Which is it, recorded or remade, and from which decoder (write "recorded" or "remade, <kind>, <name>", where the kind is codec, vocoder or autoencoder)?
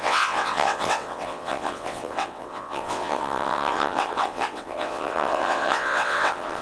remade, vocoder, WaveNeXt